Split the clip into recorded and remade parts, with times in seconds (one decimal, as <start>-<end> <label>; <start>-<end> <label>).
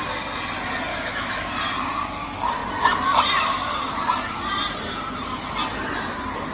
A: 0.0-0.9 recorded; 0.9-1.5 remade; 1.5-6.5 recorded